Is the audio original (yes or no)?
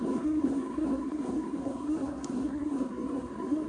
no